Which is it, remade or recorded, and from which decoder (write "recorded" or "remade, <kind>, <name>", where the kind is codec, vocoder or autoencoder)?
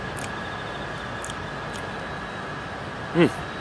recorded